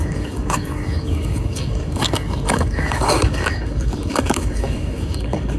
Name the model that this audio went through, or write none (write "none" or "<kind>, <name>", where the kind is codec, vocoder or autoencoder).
codec, DAC